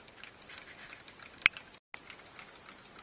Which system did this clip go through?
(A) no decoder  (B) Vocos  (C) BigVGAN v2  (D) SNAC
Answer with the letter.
A